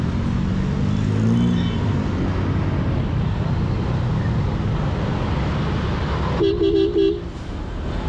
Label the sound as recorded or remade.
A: recorded